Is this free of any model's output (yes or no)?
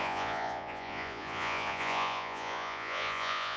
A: no